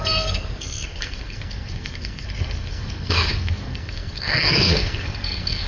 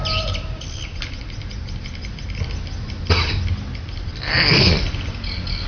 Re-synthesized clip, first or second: first